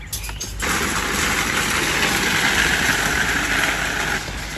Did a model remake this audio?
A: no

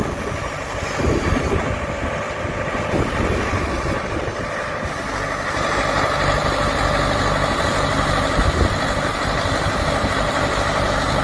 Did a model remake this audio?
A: no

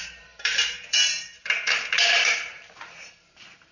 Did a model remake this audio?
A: yes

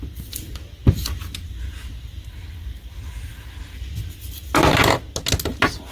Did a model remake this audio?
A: no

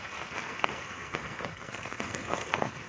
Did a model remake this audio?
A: yes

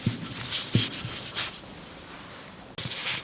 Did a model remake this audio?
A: no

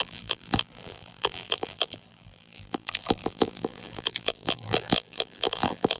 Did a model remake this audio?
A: yes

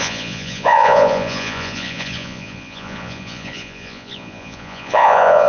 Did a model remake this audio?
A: yes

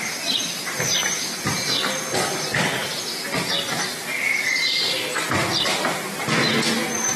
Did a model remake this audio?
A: no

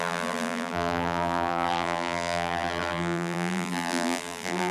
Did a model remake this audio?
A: yes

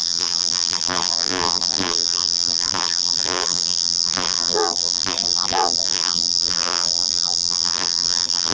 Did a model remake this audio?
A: yes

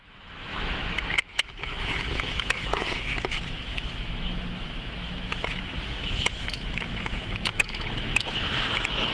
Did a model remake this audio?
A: yes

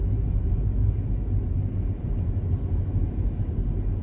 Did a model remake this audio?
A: no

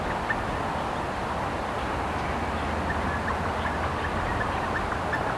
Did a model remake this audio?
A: no